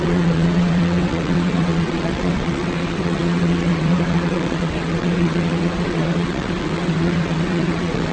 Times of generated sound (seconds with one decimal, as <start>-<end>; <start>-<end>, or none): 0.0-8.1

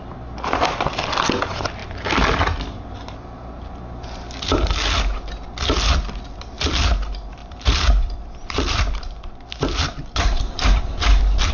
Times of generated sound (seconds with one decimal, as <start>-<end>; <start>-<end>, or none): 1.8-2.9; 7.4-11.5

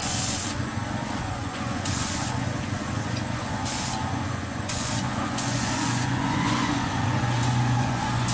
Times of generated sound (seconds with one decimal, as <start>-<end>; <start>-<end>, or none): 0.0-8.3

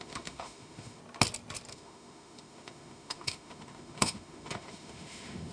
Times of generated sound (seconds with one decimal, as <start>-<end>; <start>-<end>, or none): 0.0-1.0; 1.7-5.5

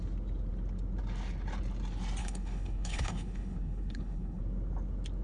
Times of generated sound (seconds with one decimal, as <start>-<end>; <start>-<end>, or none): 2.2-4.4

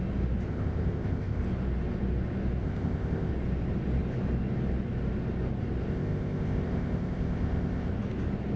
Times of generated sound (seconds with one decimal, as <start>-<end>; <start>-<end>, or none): 0.5-1.4; 2.6-3.3; 5.9-7.9

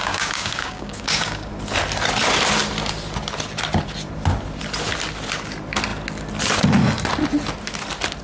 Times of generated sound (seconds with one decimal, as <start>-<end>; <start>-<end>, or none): 0.0-1.5